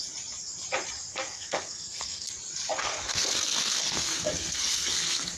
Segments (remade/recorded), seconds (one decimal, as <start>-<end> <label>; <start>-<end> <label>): 0.0-1.1 recorded; 1.1-2.3 remade; 2.3-2.8 recorded; 2.8-5.4 remade